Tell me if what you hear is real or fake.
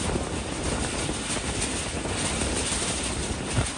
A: real